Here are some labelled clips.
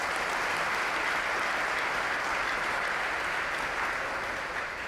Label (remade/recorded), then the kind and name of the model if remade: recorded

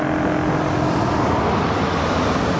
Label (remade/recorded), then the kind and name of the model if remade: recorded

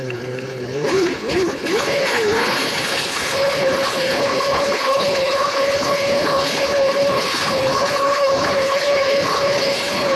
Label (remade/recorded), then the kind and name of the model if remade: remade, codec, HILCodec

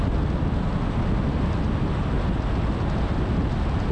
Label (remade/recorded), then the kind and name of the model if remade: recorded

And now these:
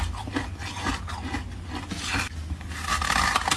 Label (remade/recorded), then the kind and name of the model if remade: recorded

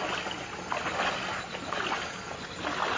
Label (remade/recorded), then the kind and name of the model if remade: recorded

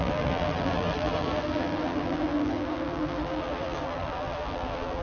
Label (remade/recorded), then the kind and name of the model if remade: remade, vocoder, BigVGAN v2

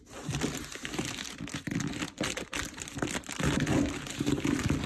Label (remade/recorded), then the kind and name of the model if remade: recorded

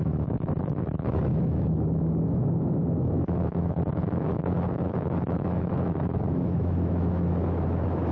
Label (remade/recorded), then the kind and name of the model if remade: remade, autoencoder, DAC-VAE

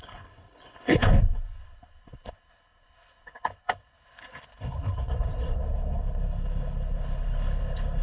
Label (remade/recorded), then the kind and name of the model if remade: remade, codec, HILCodec